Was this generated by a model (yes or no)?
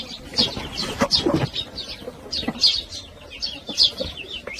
no